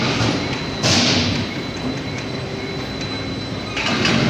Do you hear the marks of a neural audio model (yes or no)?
no